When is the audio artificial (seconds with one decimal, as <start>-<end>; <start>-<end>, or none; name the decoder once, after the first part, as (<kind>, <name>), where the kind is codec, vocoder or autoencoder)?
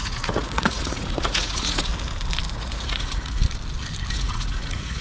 0.0-1.9 (vocoder, Vocos); 2.5-3.4; 4.1-5.0